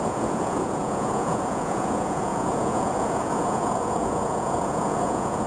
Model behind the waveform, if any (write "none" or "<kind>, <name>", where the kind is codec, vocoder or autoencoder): vocoder, Vocos